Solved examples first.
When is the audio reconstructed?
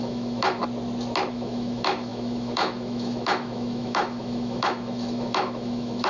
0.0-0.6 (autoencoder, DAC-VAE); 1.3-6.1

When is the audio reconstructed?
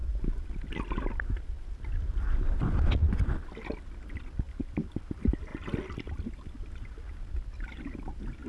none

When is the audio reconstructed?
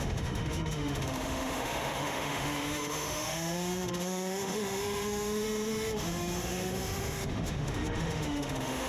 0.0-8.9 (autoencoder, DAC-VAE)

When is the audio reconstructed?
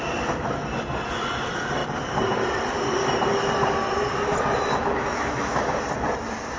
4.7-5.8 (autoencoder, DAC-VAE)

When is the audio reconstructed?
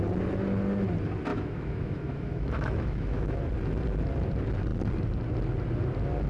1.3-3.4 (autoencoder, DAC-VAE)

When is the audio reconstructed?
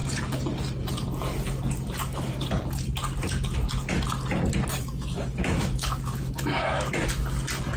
4.7-6.9 (autoencoder, DAC-VAE)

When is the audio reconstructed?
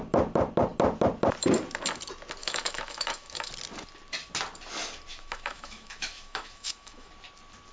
2.4-3.5 (autoencoder, DAC-VAE); 5.1-7.1